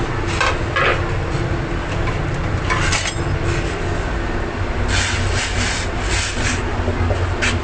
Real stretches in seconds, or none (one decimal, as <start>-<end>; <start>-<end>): 0.0-7.6

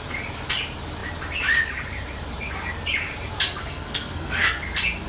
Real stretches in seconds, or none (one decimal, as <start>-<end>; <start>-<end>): 0.0-3.6; 4.6-5.1

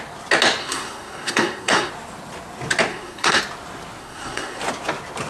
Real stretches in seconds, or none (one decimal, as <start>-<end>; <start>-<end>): 0.0-0.6; 1.9-2.9; 3.4-4.0; 4.6-5.3

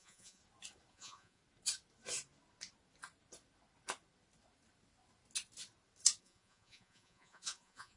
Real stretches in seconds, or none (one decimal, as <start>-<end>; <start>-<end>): 0.4-0.9; 1.4-6.2

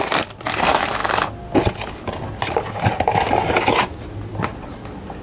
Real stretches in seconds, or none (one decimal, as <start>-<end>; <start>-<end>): 1.0-4.1; 4.5-5.2